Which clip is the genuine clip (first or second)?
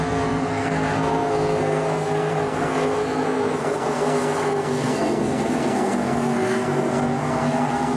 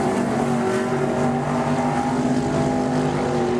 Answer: second